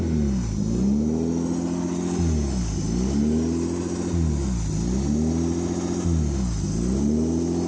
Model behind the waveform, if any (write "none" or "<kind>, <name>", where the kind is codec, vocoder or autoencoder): none